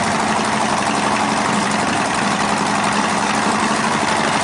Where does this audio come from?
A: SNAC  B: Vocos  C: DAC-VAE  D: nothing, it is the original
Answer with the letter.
D